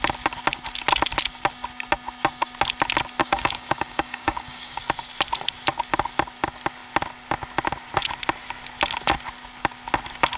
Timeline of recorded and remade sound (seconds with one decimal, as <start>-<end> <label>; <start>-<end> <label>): 0.0-3.2 recorded; 3.2-4.8 remade; 4.8-10.4 recorded